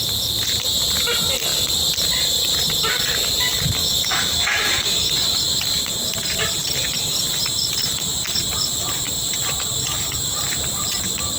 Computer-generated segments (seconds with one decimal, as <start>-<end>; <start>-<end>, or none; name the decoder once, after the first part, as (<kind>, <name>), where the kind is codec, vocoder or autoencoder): 3.8-5.1 (autoencoder, DAC-VAE)